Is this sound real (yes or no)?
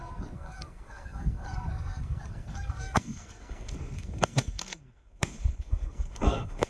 no